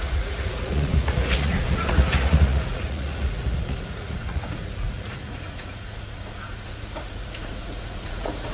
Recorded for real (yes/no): no